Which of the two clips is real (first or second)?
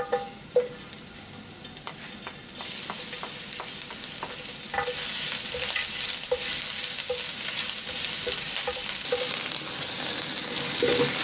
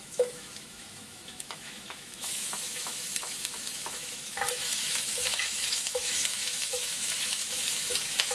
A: first